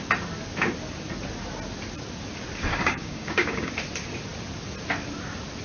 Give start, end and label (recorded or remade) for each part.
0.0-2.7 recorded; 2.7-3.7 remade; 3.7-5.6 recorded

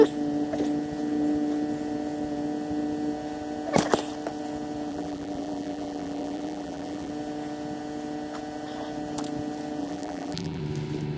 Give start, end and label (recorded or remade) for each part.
0.0-4.9 recorded; 4.9-7.1 remade; 7.1-9.8 recorded; 9.8-10.6 remade; 10.6-11.2 recorded

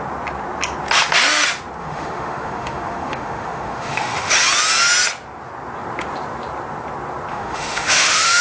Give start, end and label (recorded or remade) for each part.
0.0-1.8 recorded; 1.8-4.3 remade; 4.3-7.3 recorded; 7.3-8.4 remade

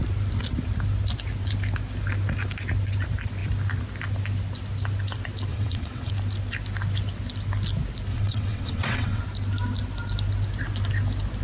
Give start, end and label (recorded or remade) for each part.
0.0-5.5 recorded; 5.5-6.1 remade; 6.1-8.1 recorded; 8.1-9.2 remade; 9.2-11.4 recorded

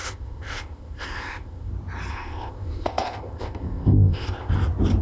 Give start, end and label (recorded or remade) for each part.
0.0-1.7 remade; 1.7-2.1 recorded; 2.1-4.5 remade; 4.5-5.0 recorded

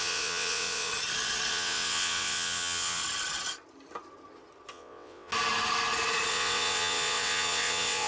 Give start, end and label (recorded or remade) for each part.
0.0-0.9 remade; 0.9-1.5 recorded; 1.5-3.0 remade; 3.0-4.7 recorded; 4.7-5.3 remade; 5.3-6.3 recorded; 6.3-8.1 remade

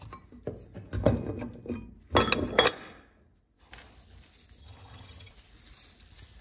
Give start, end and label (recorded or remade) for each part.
0.0-4.6 recorded; 4.6-5.3 remade; 5.3-6.4 recorded

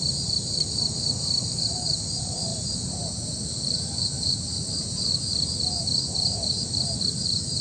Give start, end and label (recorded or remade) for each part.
0.0-7.6 remade